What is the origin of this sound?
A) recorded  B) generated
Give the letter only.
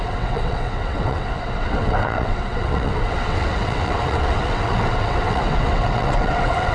B